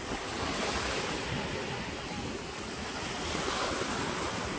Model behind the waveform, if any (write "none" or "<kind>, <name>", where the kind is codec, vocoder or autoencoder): none